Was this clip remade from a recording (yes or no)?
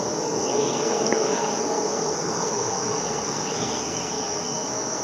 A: yes